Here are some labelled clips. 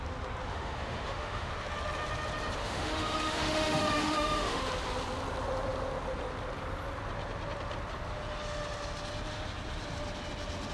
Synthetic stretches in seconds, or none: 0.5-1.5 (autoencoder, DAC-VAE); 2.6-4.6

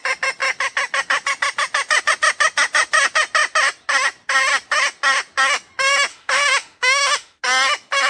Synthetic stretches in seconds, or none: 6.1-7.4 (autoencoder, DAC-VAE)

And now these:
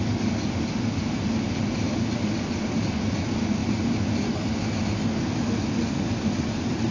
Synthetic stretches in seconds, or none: none

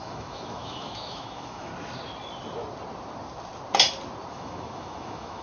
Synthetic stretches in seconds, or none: 0.0-1.7 (autoencoder, DAC-VAE); 4.3-5.4

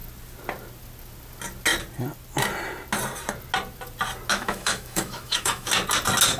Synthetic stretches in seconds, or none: 4.3-5.7 (autoencoder, DAC-VAE)